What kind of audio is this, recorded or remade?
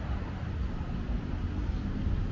recorded